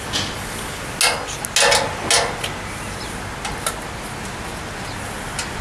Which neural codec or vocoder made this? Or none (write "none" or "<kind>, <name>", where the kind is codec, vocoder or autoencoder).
none